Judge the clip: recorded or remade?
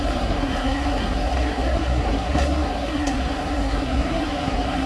remade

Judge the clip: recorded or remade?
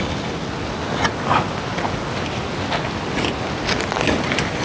recorded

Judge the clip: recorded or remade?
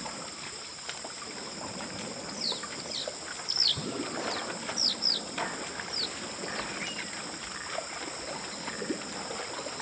recorded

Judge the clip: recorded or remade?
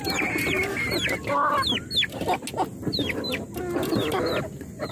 recorded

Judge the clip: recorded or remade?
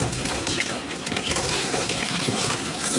remade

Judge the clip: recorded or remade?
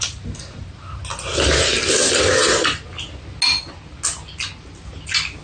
recorded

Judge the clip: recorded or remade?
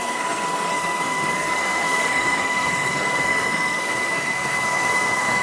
remade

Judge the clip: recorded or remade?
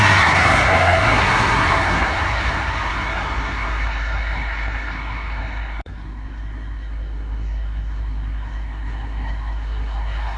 remade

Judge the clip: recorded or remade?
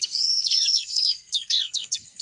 remade